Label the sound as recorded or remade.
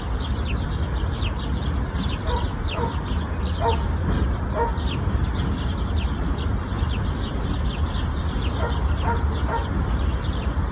recorded